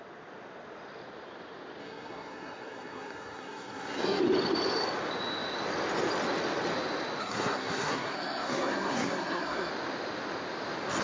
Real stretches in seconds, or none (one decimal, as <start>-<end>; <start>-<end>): 0.0-1.8; 4.2-7.2; 9.7-11.0